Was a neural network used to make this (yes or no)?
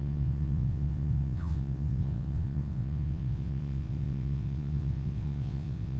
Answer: yes